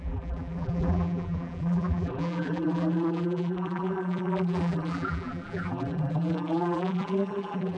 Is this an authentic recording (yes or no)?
no